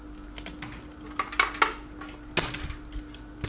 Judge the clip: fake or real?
real